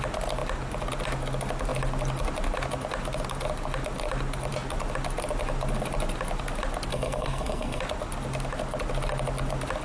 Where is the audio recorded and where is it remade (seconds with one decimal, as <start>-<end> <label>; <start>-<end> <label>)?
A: 0.0-6.9 recorded; 6.9-7.8 remade; 7.8-9.8 recorded